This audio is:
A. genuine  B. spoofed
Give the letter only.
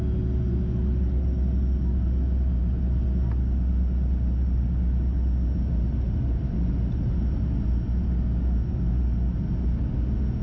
A